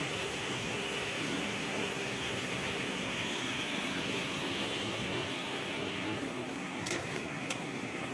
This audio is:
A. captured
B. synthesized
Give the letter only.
B